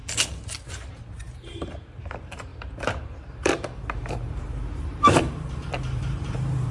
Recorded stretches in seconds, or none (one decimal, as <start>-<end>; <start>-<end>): 0.0-0.7